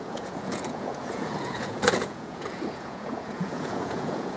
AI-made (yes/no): yes